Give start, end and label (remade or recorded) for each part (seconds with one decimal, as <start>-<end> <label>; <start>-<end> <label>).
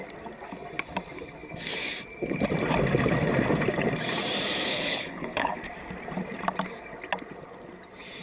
0.0-4.7 recorded; 4.7-5.6 remade; 5.6-8.2 recorded